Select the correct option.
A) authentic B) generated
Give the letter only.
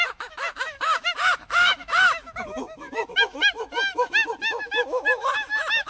B